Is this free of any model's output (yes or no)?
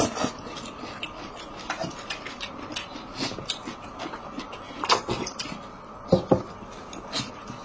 yes